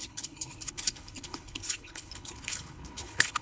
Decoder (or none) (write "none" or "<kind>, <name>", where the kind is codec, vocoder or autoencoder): codec, HILCodec